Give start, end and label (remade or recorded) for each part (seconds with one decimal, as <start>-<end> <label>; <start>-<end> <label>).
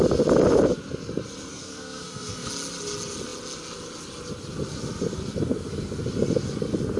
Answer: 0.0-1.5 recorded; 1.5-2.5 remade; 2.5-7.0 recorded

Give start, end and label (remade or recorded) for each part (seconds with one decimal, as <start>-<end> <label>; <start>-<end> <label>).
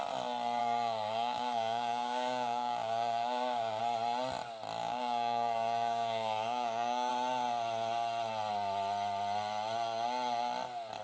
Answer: 0.0-0.6 recorded; 0.6-3.8 remade; 3.8-4.8 recorded; 4.8-7.1 remade; 7.1-11.0 recorded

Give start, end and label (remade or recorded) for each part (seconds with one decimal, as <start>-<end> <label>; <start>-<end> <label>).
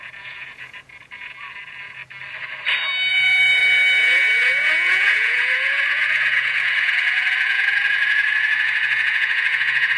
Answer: 0.0-2.0 remade; 2.0-3.1 recorded; 3.1-10.0 remade